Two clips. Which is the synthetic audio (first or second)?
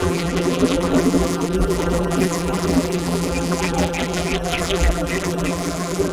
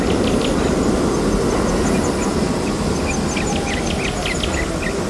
first